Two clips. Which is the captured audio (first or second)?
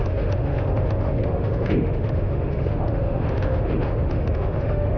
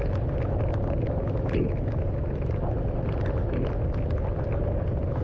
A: second